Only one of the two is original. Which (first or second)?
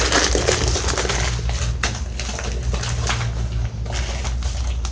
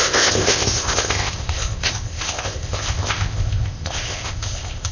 first